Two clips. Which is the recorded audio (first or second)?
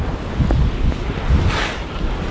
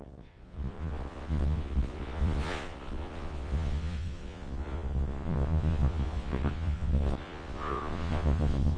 first